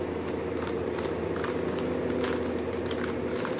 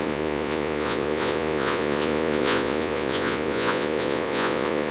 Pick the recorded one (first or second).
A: first